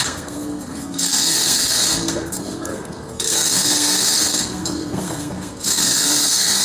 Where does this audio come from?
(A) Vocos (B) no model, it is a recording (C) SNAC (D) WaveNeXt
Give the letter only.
C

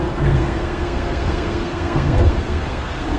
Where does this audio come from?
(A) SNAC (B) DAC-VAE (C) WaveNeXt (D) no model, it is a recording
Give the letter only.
A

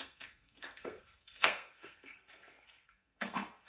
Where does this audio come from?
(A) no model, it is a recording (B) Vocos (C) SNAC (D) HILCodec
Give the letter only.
C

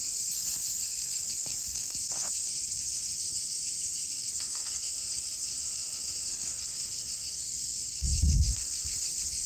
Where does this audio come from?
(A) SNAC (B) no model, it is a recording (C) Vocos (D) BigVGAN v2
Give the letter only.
A